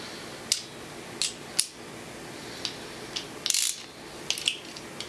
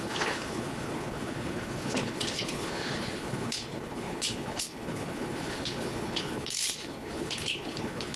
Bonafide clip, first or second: first